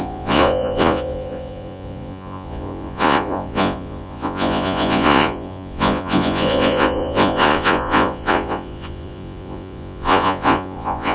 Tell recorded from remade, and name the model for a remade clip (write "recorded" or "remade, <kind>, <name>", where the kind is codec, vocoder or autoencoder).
remade, vocoder, Vocos